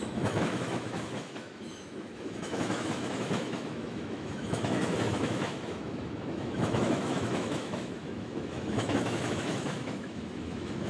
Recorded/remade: remade